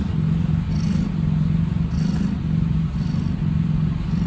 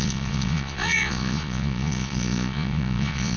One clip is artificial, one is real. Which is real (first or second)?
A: first